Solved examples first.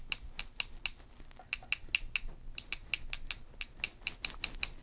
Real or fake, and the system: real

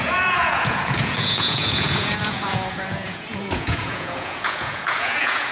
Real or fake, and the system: fake, vocoder, Vocos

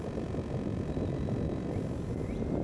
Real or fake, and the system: real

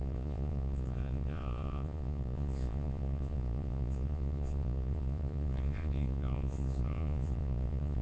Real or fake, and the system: fake, vocoder, Vocos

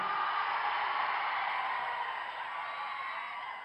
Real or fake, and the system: real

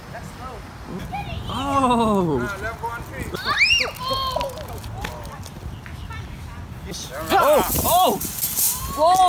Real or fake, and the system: real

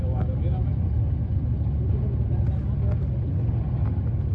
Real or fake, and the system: real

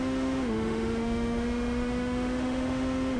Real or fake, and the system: fake, autoencoder, DAC-VAE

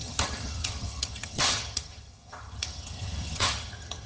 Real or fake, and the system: fake, vocoder, HiFi-GAN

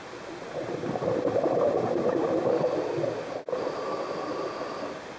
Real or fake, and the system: real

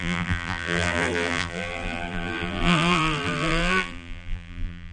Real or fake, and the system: fake, vocoder, BigVGAN v2